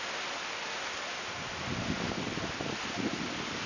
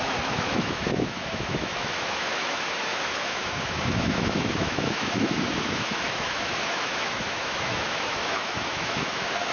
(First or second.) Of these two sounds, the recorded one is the first